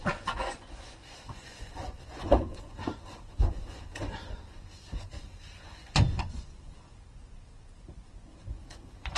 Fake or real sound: fake